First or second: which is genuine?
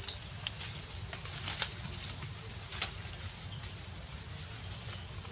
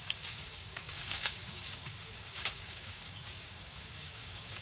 first